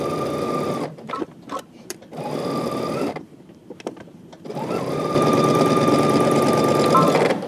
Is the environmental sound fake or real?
fake